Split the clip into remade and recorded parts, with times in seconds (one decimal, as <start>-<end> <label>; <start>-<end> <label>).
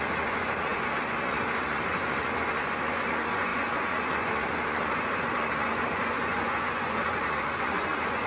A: 0.0-8.3 remade